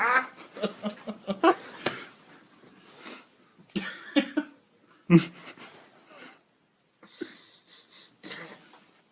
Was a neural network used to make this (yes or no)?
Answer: no